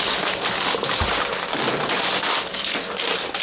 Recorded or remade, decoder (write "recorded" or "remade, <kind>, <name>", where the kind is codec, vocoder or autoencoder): recorded